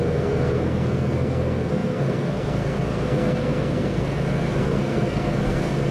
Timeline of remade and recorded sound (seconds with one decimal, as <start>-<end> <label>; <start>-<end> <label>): 0.0-5.9 remade